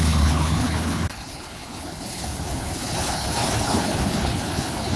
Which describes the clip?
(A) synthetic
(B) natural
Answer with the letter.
A